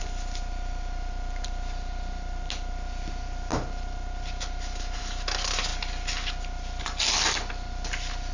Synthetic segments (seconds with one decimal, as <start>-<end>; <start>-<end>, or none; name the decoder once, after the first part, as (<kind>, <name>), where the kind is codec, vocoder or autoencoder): none